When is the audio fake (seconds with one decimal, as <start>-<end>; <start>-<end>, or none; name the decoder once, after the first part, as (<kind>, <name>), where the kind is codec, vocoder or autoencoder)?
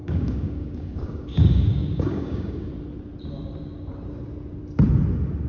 0.0-2.7 (codec, DAC)